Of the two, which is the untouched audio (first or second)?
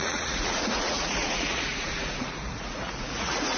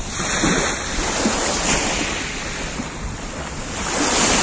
second